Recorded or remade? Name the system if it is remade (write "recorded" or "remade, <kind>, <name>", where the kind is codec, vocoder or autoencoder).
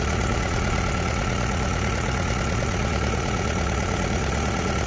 remade, vocoder, Vocos